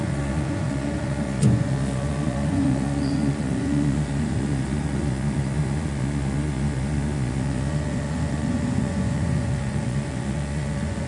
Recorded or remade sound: remade